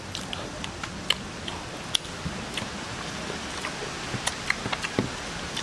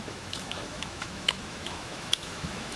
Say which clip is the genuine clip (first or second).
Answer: first